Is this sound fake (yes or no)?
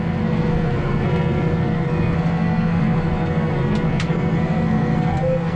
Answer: yes